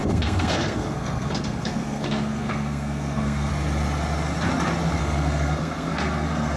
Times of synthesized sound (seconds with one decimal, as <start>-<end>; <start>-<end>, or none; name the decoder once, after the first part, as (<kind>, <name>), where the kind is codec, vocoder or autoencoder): 0.0-3.5 (codec, SNAC); 5.0-6.6